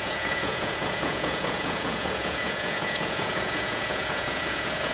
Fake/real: fake